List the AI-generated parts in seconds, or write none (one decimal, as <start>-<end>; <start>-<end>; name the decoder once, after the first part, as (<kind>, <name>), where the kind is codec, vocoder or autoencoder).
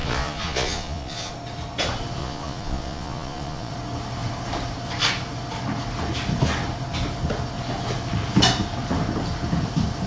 0.0-1.3 (vocoder, Vocos); 2.2-3.7